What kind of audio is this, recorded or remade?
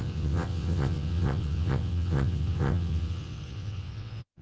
remade